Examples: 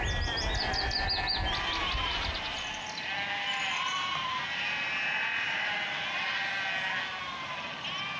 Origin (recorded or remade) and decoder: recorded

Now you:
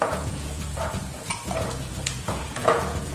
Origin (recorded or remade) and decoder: remade, vocoder, Vocos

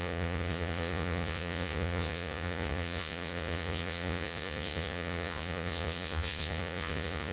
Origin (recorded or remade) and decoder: remade, vocoder, Vocos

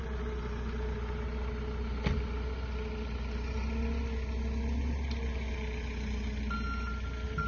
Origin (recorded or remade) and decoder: recorded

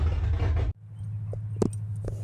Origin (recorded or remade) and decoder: recorded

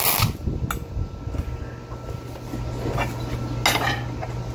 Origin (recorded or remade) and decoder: recorded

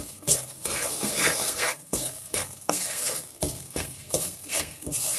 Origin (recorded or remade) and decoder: remade, codec, SNAC